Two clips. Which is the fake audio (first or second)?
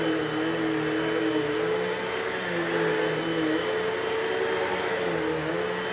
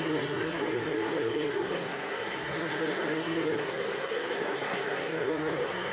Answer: second